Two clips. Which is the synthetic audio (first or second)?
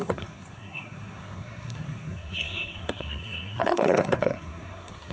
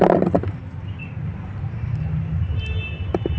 first